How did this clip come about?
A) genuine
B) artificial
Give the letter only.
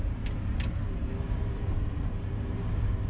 B